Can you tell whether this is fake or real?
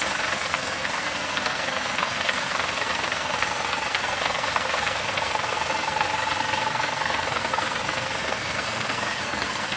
fake